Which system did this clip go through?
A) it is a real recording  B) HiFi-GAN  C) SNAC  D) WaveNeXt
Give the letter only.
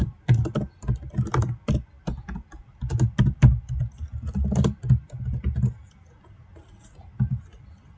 A